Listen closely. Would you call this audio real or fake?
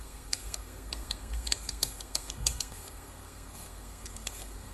fake